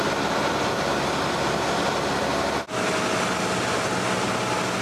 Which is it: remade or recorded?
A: recorded